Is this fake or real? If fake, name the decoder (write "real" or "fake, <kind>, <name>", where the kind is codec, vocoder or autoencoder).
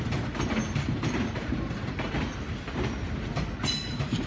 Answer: real